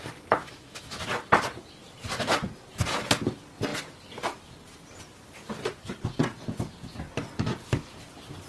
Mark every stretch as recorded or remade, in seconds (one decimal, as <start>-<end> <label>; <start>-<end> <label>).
0.0-0.4 recorded; 0.4-1.0 remade; 1.0-8.5 recorded